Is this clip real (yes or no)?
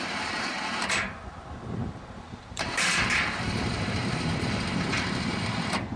no